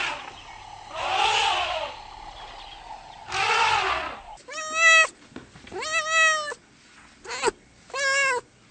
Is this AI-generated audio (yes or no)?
no